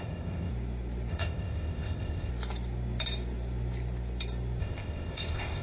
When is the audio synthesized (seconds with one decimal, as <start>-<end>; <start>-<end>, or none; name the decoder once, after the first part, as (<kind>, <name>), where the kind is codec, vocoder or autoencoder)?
0.0-0.5 (codec, ZipCodec); 1.1-2.3; 4.6-5.6